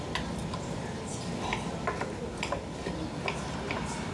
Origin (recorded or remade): recorded